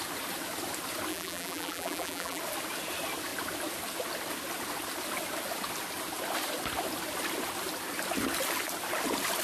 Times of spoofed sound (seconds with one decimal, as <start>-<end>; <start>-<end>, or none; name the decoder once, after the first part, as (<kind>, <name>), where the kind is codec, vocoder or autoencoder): 1.1-2.4 (vocoder, BigVGAN v2)